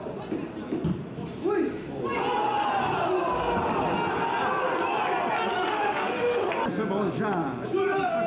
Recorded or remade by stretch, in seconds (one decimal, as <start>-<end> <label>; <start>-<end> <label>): 0.0-5.5 recorded; 5.5-6.5 remade; 6.5-8.3 recorded